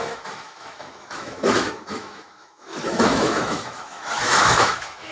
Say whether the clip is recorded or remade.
remade